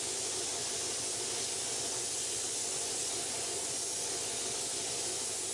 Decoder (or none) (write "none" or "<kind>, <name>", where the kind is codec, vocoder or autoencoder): vocoder, Vocos